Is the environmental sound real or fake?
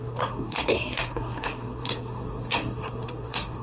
fake